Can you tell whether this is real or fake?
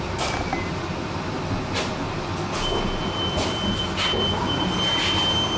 real